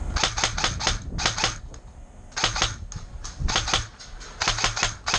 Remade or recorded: recorded